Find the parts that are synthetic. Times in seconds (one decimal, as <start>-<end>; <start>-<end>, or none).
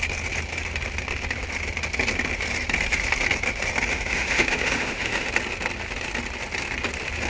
3.9-5.3